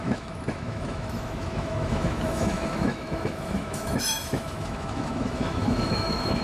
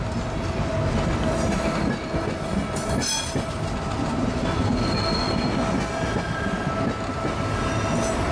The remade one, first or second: first